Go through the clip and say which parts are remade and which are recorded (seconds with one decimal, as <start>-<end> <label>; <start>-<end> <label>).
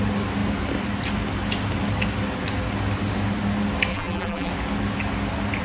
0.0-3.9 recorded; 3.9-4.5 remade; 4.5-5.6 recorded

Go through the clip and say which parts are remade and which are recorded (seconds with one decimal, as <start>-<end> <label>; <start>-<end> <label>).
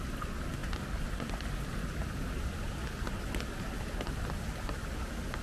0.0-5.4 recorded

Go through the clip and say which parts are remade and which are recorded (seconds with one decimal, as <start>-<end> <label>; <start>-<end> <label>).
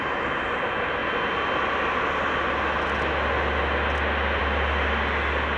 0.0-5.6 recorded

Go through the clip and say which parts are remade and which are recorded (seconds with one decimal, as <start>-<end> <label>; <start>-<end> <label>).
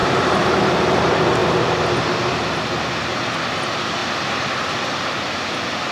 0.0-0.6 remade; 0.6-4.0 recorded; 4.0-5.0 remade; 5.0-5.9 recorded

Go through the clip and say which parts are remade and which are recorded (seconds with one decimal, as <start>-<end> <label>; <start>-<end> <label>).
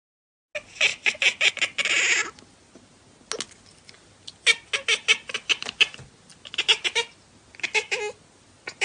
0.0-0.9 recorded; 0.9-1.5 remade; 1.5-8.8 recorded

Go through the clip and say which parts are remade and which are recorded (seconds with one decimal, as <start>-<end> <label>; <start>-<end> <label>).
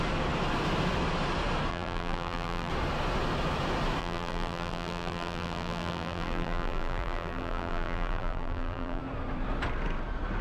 0.0-1.7 recorded; 1.7-2.7 remade; 2.7-4.0 recorded; 4.0-9.0 remade; 9.0-10.4 recorded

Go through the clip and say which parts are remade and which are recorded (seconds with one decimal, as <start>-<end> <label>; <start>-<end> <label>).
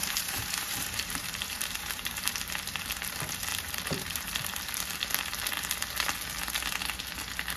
0.0-2.3 remade; 2.3-3.5 recorded; 3.5-4.4 remade; 4.4-7.6 recorded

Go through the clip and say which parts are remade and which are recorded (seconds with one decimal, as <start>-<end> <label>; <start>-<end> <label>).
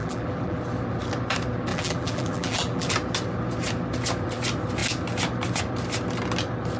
0.0-0.6 remade; 0.6-1.7 recorded; 1.7-2.9 remade; 2.9-6.8 recorded